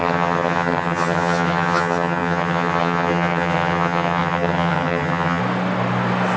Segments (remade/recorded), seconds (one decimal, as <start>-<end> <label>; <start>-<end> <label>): 0.0-5.4 remade; 5.4-6.4 recorded